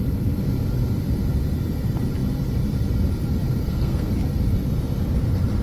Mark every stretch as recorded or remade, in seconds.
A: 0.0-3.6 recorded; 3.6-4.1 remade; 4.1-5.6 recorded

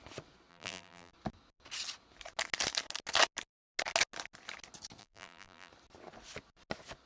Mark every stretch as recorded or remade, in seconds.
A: 0.0-0.5 recorded; 0.5-1.1 remade; 1.1-5.0 recorded; 5.0-5.7 remade; 5.7-7.1 recorded

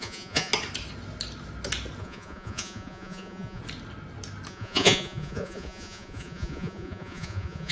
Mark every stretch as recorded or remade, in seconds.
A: 0.0-0.5 remade; 0.5-2.0 recorded; 2.0-3.6 remade; 3.6-4.5 recorded; 4.5-7.7 remade

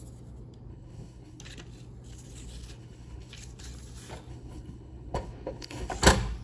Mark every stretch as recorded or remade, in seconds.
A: 0.0-0.7 recorded; 0.7-1.4 remade; 1.4-2.8 recorded; 2.8-3.3 remade; 3.3-4.3 recorded; 4.3-5.9 remade; 5.9-6.4 recorded

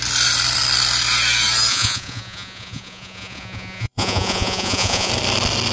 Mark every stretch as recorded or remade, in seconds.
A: 0.0-1.7 recorded; 1.7-5.1 remade; 5.1-5.7 recorded

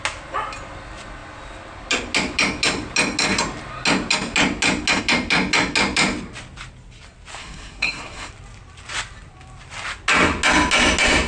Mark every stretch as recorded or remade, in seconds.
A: 0.0-7.4 recorded; 7.4-8.3 remade; 8.3-11.3 recorded

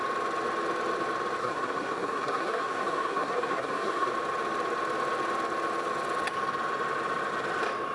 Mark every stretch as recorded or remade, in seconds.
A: 0.0-1.4 recorded; 1.4-4.1 remade; 4.1-7.9 recorded

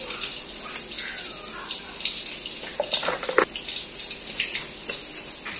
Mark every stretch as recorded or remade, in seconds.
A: 0.0-5.6 recorded